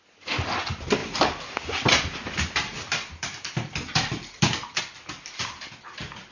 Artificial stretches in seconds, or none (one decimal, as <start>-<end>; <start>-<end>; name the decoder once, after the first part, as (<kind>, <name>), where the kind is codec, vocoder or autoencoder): 1.0-4.8 (vocoder, BigVGAN v2)